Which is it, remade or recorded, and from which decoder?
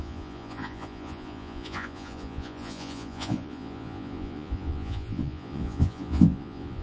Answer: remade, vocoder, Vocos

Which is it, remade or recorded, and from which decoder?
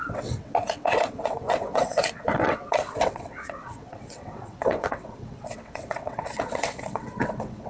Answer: remade, vocoder, WaveNeXt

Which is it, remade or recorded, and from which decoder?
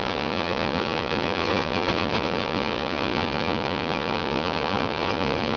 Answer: remade, vocoder, Vocos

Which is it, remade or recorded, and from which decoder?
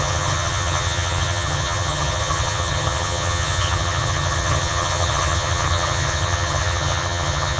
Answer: remade, vocoder, HiFi-GAN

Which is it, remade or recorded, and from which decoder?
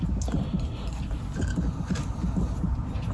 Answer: recorded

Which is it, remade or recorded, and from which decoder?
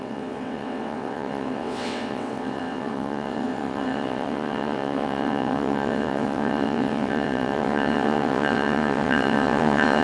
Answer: remade, vocoder, WaveNeXt